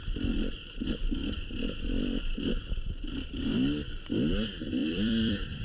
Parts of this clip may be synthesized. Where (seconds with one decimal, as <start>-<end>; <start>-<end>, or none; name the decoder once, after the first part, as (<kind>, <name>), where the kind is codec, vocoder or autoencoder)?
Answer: 4.8-5.6 (vocoder, BigVGAN v2)